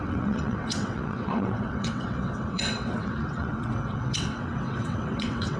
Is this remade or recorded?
remade